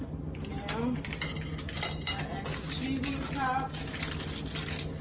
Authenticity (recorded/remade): recorded